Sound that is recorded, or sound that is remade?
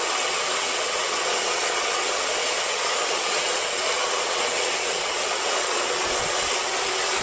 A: remade